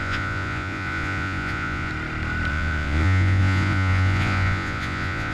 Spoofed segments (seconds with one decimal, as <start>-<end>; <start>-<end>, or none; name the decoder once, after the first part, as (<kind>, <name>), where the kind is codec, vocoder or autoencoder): 0.0-1.9 (vocoder, Vocos); 2.5-5.3